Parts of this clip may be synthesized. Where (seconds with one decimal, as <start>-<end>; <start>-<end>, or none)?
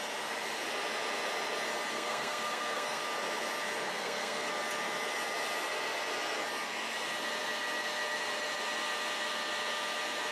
1.9-3.0; 3.9-4.5